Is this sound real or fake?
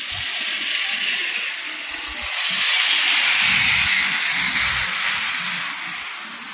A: real